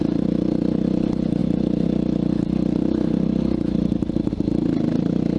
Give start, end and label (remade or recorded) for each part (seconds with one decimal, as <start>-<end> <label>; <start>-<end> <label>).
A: 0.0-5.4 recorded